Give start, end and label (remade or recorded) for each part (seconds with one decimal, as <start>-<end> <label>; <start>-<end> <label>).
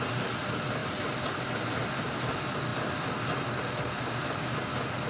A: 0.0-5.1 recorded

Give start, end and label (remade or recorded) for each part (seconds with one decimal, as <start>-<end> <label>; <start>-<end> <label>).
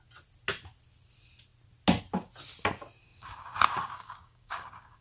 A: 0.0-3.0 recorded; 3.0-5.0 remade